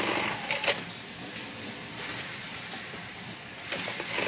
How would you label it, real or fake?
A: real